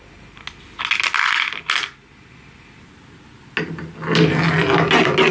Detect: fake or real real